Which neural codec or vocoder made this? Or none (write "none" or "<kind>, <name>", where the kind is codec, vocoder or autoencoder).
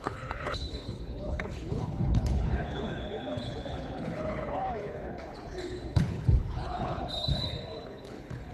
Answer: codec, HILCodec